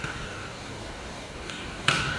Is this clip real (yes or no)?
no